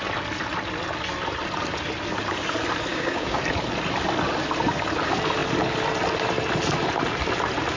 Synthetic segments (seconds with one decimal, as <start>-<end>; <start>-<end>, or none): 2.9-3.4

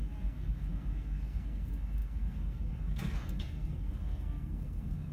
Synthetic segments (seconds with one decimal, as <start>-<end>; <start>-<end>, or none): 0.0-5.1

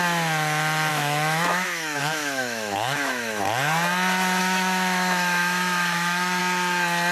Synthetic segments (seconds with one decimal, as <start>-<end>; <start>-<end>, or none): 0.9-3.4; 4.4-6.4

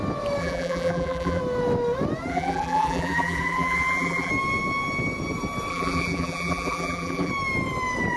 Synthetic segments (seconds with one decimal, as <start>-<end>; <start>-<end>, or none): 0.4-1.4; 2.3-4.3; 5.7-7.3

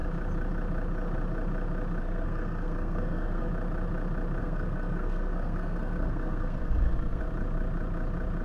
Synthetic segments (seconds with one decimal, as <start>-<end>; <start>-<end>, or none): 2.0-3.5; 4.4-7.2

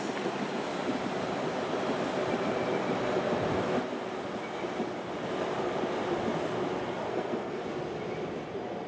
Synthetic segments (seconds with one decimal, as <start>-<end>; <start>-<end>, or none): 7.1-7.6

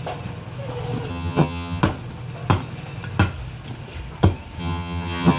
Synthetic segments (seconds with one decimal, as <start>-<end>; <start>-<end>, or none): 1.1-1.8; 4.6-5.4